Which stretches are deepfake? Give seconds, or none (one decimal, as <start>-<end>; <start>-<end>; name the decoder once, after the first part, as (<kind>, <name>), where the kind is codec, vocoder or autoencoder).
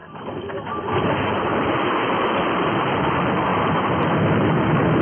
0.8-5.0 (vocoder, BigVGAN v2)